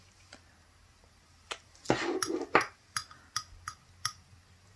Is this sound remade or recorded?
recorded